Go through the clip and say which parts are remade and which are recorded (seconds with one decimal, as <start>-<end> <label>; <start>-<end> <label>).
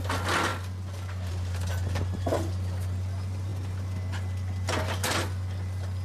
0.0-6.0 recorded